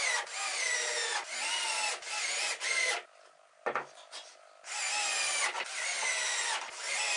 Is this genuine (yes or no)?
yes